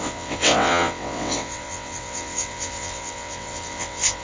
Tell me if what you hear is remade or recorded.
remade